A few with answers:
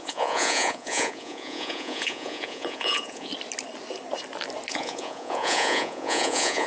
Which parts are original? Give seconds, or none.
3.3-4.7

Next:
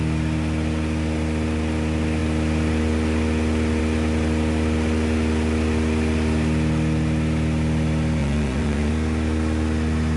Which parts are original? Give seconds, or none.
0.0-8.2; 8.9-10.2

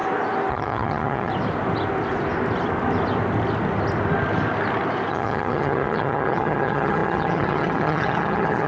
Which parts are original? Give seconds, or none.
0.0-0.5; 1.3-5.1

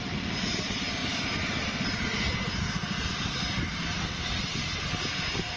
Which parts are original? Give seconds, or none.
0.0-5.6

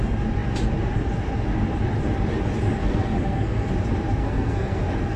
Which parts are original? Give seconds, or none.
0.0-2.8; 3.7-4.2; 4.8-5.2

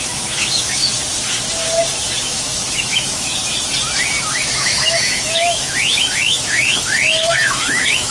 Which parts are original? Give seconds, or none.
0.8-2.2; 3.4-4.1

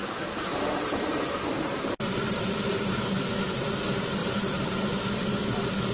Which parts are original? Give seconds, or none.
2.9-4.2; 5.1-5.9